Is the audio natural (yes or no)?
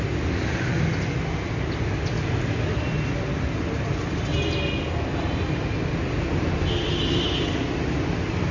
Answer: yes